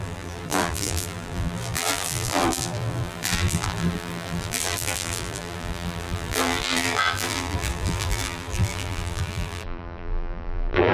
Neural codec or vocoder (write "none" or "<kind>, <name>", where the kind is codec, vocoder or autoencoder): vocoder, BigVGAN v2